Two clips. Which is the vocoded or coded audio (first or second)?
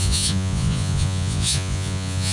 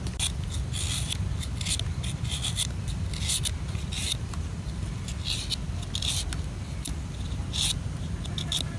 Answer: first